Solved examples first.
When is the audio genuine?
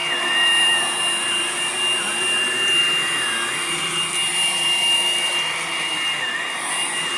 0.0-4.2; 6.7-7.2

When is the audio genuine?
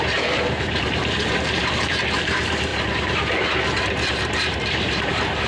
none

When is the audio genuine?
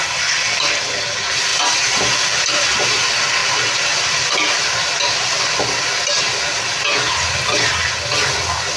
0.0-8.8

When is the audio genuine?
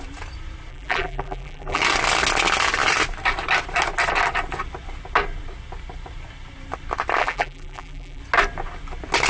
0.0-0.7; 1.8-7.2; 8.2-9.3